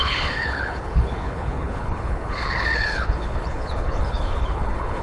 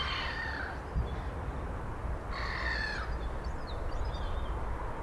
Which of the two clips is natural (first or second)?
second